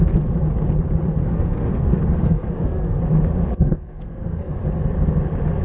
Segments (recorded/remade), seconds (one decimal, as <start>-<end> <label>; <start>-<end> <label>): 0.0-1.2 recorded; 1.2-3.0 remade; 3.0-3.5 recorded; 3.5-4.6 remade; 4.6-5.6 recorded